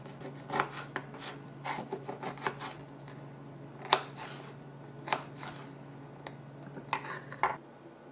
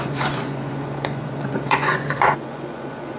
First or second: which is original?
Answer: first